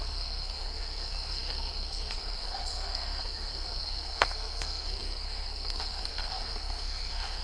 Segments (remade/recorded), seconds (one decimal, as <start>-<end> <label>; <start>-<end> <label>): 0.0-7.4 remade